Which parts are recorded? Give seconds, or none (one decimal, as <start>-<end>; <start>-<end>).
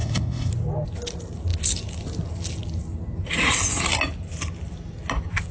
0.5-5.5